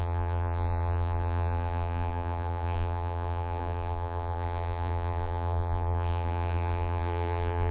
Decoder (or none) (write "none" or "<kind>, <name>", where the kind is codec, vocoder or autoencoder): vocoder, BigVGAN v2